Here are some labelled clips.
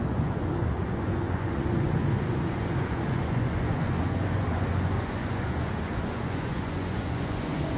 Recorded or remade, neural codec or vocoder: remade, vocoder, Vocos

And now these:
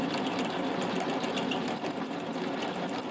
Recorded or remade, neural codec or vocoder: recorded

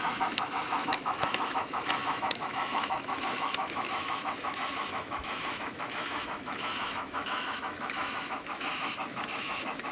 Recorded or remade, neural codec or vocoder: remade, autoencoder, DAC-VAE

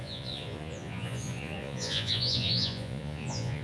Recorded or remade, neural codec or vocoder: remade, vocoder, Vocos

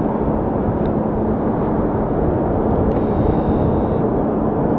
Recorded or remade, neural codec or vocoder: recorded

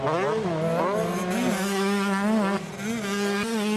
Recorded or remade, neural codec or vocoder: recorded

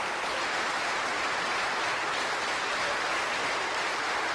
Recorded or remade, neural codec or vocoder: recorded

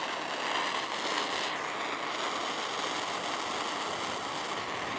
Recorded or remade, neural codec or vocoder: recorded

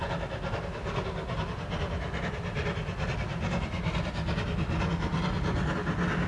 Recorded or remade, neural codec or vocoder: recorded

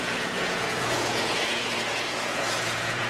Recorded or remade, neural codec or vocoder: remade, vocoder, Vocos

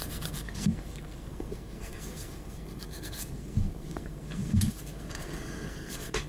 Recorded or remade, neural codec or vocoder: remade, codec, SNAC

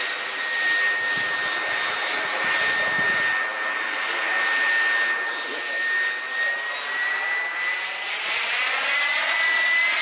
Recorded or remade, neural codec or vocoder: recorded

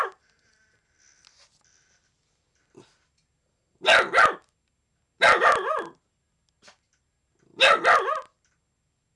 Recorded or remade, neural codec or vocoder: recorded